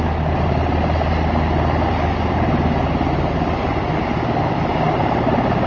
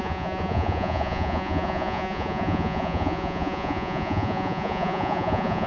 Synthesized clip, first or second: second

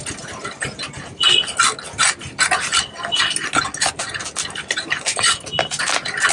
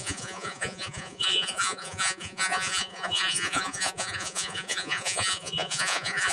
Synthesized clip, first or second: second